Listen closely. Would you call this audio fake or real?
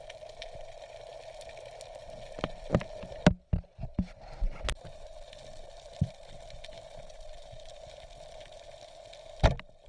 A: real